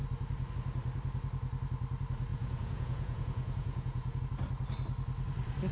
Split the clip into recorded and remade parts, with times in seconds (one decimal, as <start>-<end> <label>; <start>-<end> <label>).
0.0-2.3 recorded; 2.3-4.2 remade; 4.2-5.7 recorded